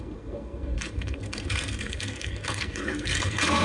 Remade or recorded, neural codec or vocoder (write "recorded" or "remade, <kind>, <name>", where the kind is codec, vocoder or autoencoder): remade, codec, SNAC